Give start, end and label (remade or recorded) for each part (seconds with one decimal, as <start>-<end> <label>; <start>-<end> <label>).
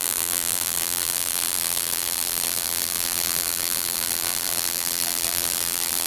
0.0-6.1 remade